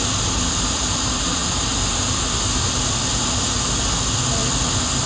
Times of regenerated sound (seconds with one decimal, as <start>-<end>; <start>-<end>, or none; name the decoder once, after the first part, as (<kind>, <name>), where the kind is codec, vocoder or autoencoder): none